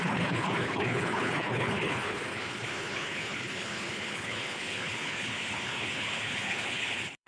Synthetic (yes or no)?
yes